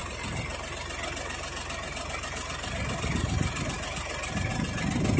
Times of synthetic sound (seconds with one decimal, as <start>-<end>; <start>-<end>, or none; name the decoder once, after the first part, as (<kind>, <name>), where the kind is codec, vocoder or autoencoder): none